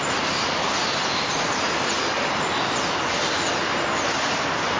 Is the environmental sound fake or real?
real